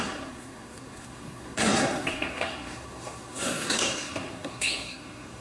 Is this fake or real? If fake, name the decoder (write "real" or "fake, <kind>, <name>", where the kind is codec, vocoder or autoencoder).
fake, codec, SNAC